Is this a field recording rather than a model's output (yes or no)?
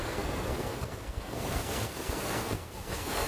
no